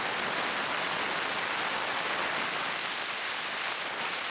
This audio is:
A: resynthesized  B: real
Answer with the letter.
B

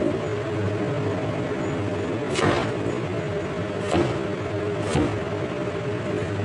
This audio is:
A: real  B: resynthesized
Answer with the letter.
A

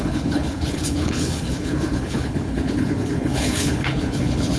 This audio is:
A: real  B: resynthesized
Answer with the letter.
B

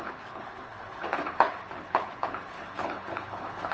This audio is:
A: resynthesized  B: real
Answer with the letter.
A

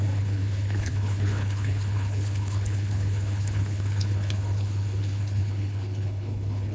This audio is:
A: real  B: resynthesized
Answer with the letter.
B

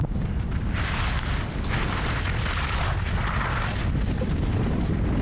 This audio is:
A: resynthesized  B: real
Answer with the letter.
B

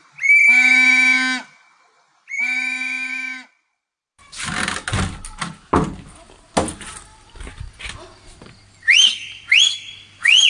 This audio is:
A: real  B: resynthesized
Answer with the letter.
A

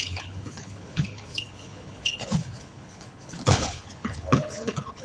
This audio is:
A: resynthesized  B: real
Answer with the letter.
A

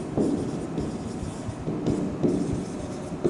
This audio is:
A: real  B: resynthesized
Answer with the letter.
A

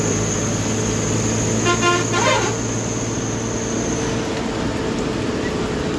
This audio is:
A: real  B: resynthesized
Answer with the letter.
A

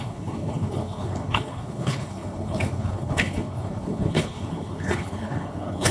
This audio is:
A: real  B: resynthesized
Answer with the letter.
B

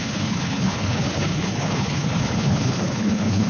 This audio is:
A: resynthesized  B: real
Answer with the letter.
A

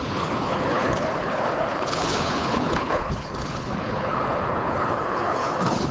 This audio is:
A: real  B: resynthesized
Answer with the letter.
B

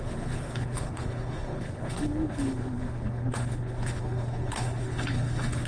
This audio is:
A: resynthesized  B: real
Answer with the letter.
A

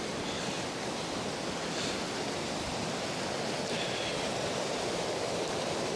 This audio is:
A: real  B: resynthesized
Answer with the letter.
A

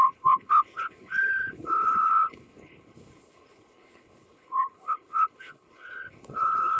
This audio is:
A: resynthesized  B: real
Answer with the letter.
A